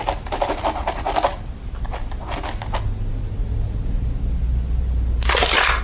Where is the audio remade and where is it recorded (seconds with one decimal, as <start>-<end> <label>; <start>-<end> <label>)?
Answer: 0.0-5.8 recorded

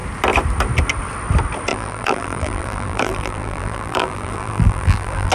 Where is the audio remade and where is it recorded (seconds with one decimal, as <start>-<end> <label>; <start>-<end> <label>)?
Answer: 0.0-1.7 recorded; 1.7-5.3 remade

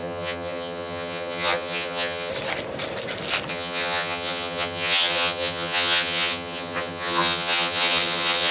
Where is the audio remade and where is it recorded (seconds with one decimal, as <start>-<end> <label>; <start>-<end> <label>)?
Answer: 0.0-2.3 remade; 2.3-3.5 recorded; 3.5-8.5 remade

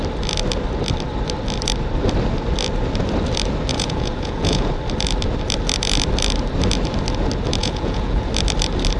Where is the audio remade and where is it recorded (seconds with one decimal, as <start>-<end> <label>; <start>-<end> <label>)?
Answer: 0.0-3.7 recorded; 3.7-4.7 remade; 4.7-7.6 recorded; 7.6-8.3 remade; 8.3-9.0 recorded

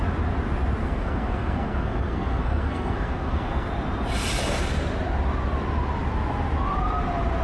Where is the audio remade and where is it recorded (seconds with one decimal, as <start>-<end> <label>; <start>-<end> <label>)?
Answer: 0.0-0.8 recorded; 0.8-3.7 remade; 3.7-7.4 recorded

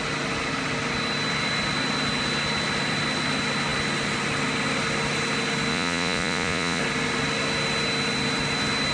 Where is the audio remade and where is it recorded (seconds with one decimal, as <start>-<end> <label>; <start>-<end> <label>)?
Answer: 0.0-5.7 recorded; 5.7-6.8 remade; 6.8-8.9 recorded

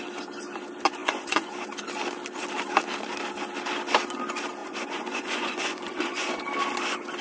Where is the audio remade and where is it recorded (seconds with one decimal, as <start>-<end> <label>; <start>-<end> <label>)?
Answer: 0.0-1.0 recorded; 1.0-1.5 remade; 1.5-4.6 recorded; 4.6-6.4 remade; 6.4-7.2 recorded

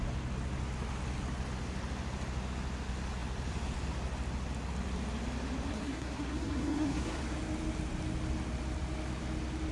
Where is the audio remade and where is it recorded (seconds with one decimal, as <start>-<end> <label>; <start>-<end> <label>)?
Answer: 0.0-5.7 recorded; 5.7-7.2 remade; 7.2-9.7 recorded